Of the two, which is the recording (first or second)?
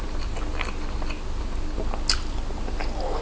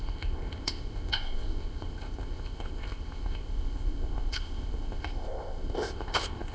first